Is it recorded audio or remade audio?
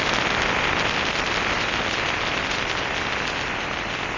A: recorded